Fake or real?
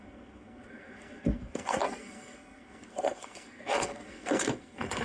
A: fake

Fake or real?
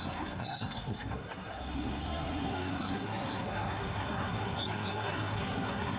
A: fake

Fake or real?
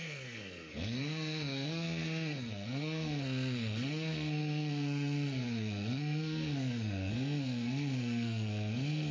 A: fake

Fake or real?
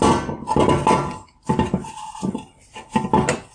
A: real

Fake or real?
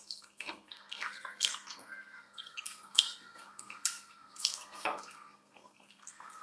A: fake